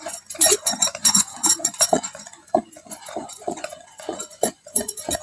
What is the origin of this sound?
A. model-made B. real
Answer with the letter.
A